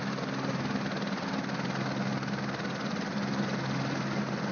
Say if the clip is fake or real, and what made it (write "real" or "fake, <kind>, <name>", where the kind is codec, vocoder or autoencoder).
real